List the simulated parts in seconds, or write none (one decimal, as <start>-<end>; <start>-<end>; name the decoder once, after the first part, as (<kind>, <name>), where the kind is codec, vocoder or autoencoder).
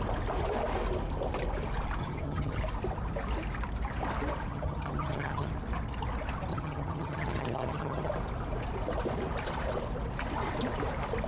2.0-2.6 (vocoder, HiFi-GAN); 4.5-5.5; 6.5-8.1